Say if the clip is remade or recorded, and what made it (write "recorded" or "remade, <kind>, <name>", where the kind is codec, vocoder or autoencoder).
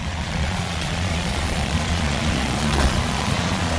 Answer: remade, vocoder, Vocos